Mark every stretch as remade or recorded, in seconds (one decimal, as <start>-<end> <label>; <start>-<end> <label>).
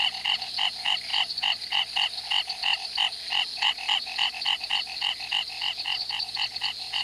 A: 0.0-7.0 recorded